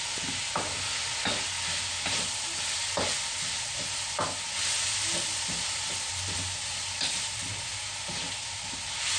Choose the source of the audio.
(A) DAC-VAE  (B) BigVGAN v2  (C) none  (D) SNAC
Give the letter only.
C